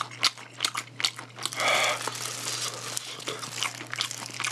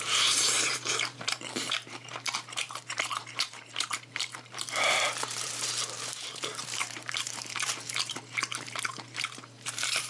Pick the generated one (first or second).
second